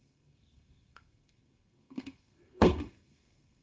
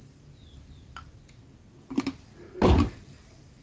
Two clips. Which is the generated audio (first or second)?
first